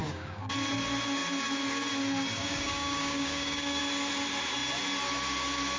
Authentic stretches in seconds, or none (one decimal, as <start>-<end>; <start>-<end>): 0.5-2.4; 3.8-5.8